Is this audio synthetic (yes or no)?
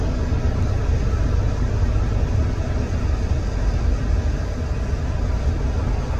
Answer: no